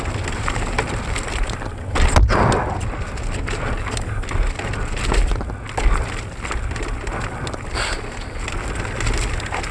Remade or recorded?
recorded